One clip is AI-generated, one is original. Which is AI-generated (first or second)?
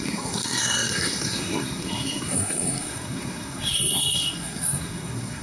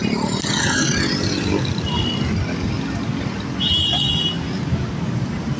first